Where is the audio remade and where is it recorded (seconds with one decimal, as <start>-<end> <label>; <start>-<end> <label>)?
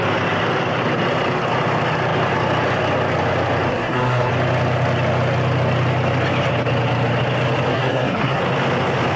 0.0-3.7 recorded; 3.7-4.3 remade; 4.3-7.7 recorded; 7.7-8.4 remade; 8.4-9.2 recorded